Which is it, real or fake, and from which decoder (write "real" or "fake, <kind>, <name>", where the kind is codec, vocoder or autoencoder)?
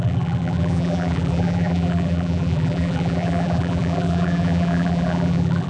fake, vocoder, BigVGAN v2